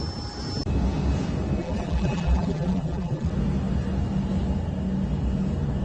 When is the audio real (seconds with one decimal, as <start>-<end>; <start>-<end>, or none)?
0.0-1.6; 3.3-5.8